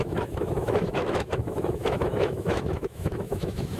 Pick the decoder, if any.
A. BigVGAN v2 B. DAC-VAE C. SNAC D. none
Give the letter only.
B